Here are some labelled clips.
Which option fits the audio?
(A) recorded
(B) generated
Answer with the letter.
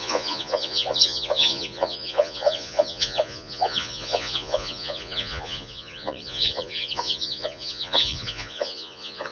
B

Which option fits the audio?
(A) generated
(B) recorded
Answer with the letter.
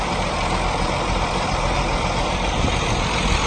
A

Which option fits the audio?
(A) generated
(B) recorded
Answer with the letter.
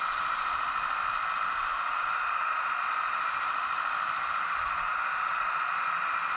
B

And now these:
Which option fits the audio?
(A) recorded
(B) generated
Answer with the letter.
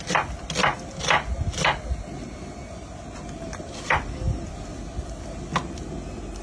A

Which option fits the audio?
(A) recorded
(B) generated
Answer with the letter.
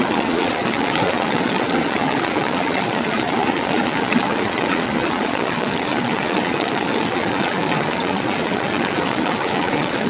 B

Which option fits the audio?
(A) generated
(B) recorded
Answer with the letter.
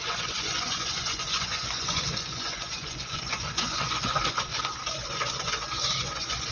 A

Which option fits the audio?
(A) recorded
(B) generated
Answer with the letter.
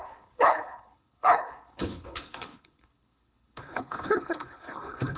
B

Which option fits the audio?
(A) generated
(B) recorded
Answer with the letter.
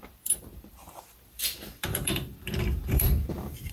A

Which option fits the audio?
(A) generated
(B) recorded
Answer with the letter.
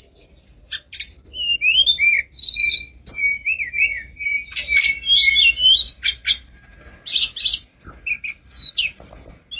B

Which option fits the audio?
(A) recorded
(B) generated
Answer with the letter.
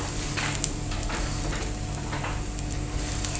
A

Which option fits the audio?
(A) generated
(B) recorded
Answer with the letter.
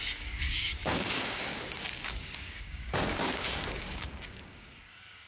A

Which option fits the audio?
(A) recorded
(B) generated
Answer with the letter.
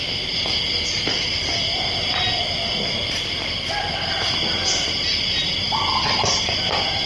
A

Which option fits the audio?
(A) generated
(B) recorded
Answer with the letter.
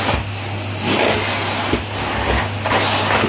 B